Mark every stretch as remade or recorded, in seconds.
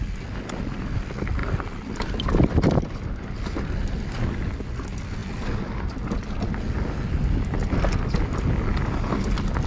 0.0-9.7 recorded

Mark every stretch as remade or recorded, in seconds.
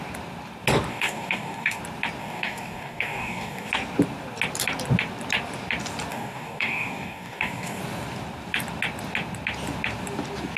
0.0-0.9 recorded; 0.9-1.8 remade; 1.8-2.2 recorded; 2.2-3.7 remade; 3.7-6.1 recorded; 6.1-7.8 remade; 7.8-10.6 recorded